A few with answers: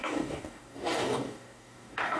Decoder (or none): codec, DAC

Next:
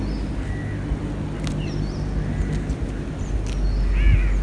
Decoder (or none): none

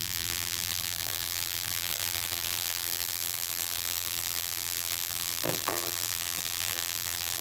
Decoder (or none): vocoder, BigVGAN v2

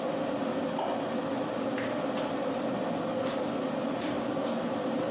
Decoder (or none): none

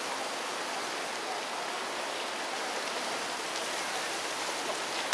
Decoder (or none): none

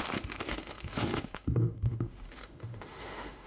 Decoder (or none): autoencoder, DAC-VAE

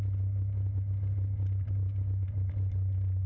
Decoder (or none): none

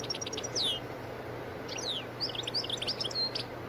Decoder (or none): none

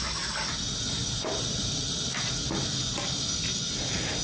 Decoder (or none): none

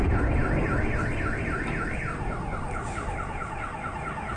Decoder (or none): none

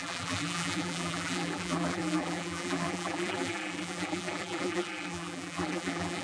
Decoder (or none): vocoder, BigVGAN v2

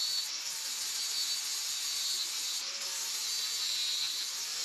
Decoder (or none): none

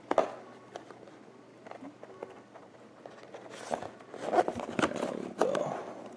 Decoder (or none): none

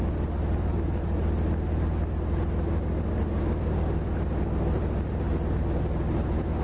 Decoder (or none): none